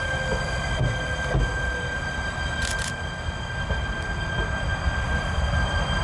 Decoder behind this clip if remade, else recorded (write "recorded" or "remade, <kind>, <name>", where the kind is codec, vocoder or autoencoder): recorded